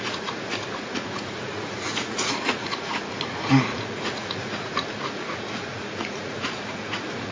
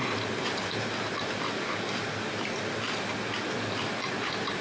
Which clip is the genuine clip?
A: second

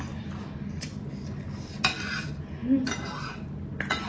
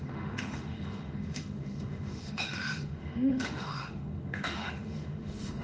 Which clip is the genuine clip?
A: first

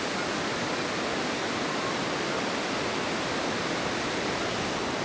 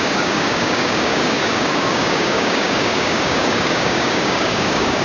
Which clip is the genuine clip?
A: first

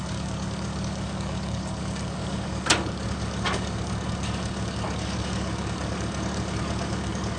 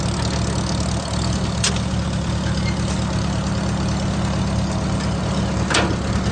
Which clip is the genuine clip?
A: second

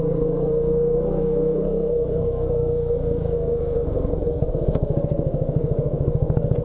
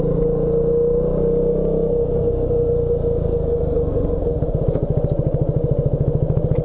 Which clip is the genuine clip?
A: second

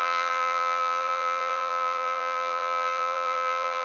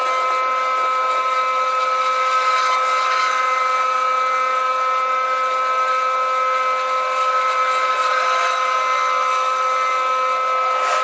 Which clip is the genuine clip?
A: second